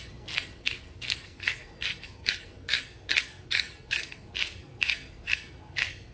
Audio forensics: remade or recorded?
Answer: remade